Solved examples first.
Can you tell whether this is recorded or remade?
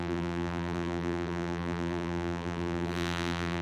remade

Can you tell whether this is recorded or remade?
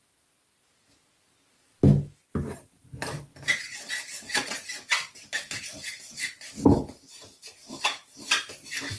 recorded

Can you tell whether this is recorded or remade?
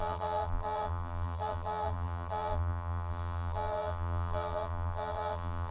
remade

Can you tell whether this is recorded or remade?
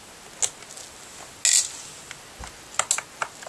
recorded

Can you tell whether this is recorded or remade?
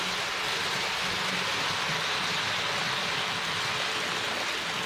recorded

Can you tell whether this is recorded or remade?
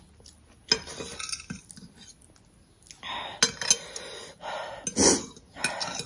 recorded